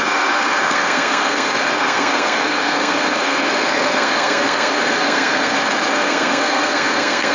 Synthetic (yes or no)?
yes